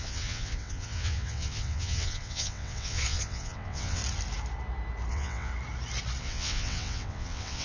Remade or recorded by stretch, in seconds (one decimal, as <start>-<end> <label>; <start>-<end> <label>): 0.0-4.0 remade; 4.0-5.1 recorded; 5.1-5.5 remade; 5.5-6.2 recorded; 6.2-7.6 remade